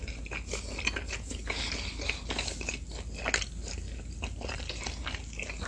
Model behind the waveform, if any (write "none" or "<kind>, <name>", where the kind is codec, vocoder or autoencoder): none